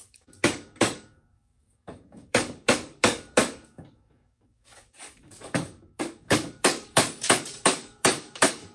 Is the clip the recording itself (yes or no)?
no